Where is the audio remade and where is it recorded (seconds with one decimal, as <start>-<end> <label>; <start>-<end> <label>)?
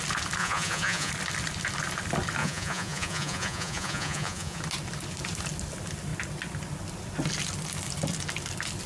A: 0.0-0.4 recorded; 0.4-1.1 remade; 1.1-2.4 recorded; 2.4-4.6 remade; 4.6-8.9 recorded